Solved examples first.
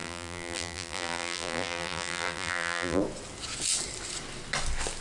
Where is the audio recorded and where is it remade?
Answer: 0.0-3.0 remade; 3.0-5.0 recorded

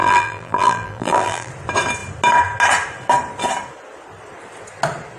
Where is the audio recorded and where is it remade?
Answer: 0.0-1.5 remade; 1.5-5.2 recorded

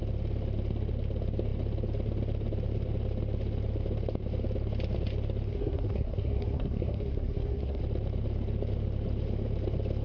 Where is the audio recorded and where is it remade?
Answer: 0.0-5.5 recorded; 5.5-7.8 remade; 7.8-10.0 recorded